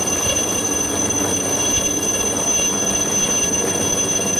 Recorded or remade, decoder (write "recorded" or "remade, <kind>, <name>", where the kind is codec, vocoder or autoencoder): recorded